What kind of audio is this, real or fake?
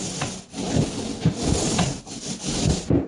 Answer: real